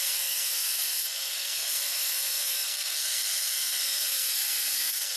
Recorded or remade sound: remade